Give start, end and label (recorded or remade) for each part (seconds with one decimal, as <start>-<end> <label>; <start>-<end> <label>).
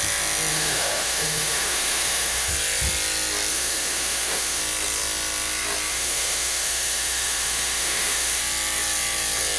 0.0-0.5 recorded; 0.5-2.5 remade; 2.5-3.5 recorded; 3.5-4.6 remade; 4.6-5.9 recorded; 5.9-8.4 remade; 8.4-9.6 recorded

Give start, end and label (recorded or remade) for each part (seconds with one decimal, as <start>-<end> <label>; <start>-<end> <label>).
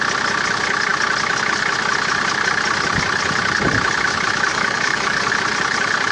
0.0-4.5 recorded; 4.5-5.3 remade; 5.3-6.1 recorded